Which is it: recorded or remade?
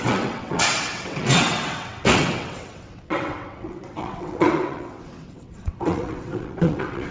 remade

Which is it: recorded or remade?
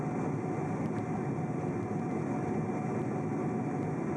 recorded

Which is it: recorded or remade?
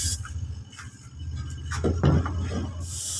recorded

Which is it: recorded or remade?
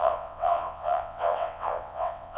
remade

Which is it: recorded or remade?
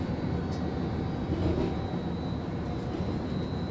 recorded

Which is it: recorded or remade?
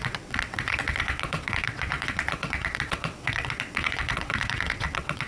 remade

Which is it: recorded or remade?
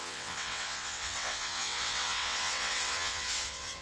remade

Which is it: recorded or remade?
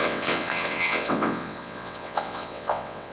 remade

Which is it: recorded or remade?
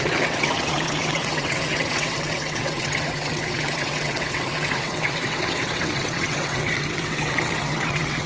remade